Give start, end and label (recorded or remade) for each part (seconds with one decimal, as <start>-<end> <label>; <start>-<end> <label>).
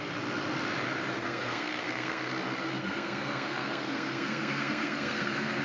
0.0-1.2 recorded; 1.2-2.3 remade; 2.3-2.8 recorded; 2.8-5.6 remade